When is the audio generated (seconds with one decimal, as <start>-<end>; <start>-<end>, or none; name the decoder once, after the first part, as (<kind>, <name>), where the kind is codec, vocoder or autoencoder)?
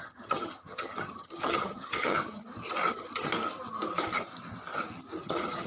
0.0-2.4 (vocoder, HiFi-GAN); 2.9-3.3; 5.2-5.7